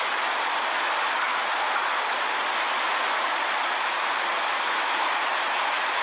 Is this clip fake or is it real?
real